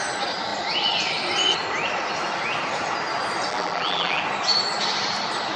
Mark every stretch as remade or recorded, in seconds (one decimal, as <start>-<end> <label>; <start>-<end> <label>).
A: 0.0-3.5 recorded; 3.5-4.2 remade; 4.2-5.6 recorded